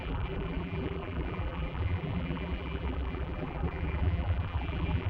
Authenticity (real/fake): fake